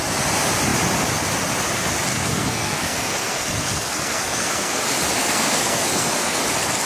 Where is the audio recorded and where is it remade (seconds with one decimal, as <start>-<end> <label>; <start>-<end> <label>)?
0.0-2.1 recorded; 2.1-4.8 remade; 4.8-5.2 recorded; 5.2-6.4 remade; 6.4-6.9 recorded